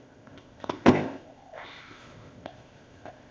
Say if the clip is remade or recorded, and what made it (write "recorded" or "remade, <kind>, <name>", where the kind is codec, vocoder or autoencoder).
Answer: remade, codec, ZipCodec